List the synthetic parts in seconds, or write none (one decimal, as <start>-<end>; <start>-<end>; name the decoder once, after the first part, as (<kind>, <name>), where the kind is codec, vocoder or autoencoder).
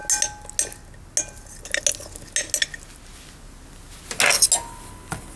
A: none